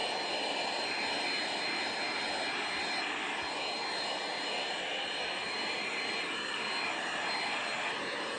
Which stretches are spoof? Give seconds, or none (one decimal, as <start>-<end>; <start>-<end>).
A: none